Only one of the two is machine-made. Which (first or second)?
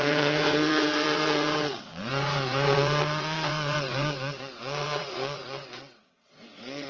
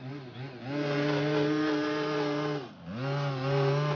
first